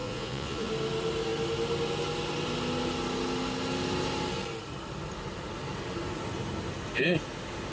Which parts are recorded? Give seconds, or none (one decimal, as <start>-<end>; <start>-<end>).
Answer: 0.7-7.7